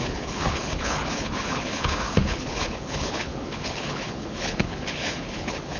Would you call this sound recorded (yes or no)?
no